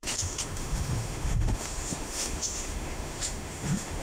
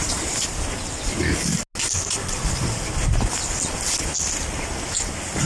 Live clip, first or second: second